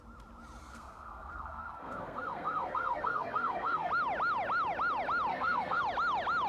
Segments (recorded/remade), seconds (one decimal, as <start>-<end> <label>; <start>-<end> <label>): 0.0-0.6 recorded; 0.6-3.9 remade; 3.9-5.3 recorded; 5.3-5.8 remade; 5.8-6.5 recorded